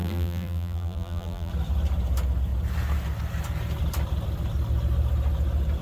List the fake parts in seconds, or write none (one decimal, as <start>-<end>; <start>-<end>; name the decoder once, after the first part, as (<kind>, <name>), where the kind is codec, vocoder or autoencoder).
0.0-1.5 (vocoder, BigVGAN v2)